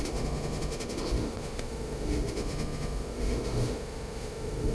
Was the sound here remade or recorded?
remade